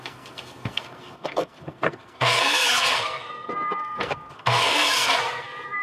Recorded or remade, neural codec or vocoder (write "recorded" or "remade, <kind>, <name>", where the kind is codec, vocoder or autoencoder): remade, codec, SNAC